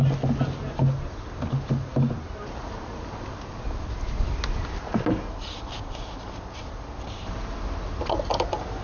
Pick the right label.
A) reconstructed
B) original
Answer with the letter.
B